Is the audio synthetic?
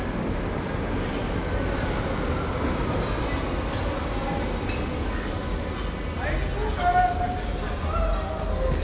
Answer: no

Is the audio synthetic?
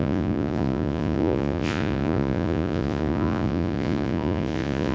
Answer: yes